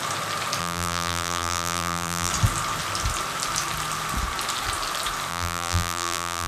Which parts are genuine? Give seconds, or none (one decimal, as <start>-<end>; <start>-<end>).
0.0-0.6; 2.3-5.3